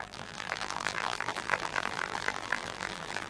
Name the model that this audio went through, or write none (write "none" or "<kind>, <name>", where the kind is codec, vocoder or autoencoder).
vocoder, BigVGAN v2